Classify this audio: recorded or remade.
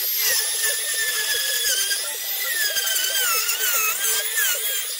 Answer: recorded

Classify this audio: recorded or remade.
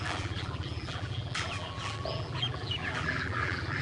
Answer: remade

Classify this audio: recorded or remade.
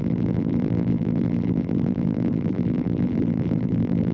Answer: remade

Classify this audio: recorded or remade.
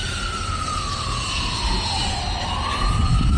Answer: recorded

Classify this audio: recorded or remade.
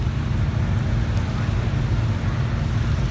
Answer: recorded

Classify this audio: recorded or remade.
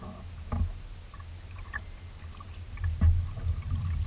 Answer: recorded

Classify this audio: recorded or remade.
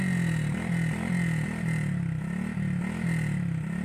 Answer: recorded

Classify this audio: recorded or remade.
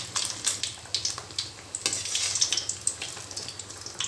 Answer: recorded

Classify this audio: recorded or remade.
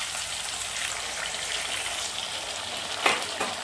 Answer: remade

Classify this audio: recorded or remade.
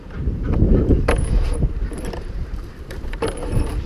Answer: remade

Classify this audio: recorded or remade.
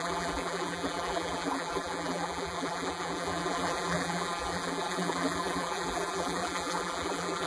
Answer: remade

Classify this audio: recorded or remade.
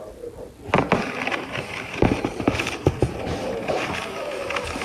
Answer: remade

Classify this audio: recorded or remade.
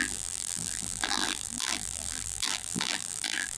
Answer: remade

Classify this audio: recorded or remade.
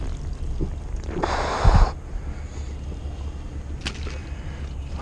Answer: recorded